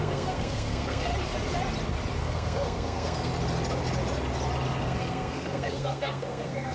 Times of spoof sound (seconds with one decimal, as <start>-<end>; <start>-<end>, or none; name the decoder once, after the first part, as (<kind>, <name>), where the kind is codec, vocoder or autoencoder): 0.0-1.1 (codec, SNAC); 2.2-3.3; 4.8-6.7